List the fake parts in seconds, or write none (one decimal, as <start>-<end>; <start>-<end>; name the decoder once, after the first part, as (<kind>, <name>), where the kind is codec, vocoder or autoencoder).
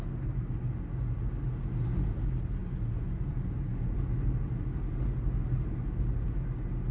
none